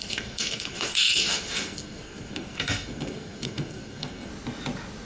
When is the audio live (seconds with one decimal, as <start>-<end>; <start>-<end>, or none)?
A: 4.3-5.1

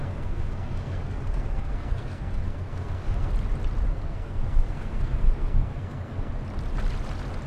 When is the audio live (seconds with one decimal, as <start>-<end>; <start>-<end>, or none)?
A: 3.3-3.9; 6.3-7.5